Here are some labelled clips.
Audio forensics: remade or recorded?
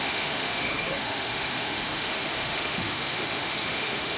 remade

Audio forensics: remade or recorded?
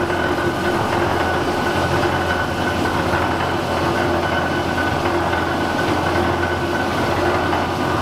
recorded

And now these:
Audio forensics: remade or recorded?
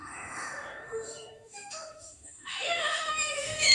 remade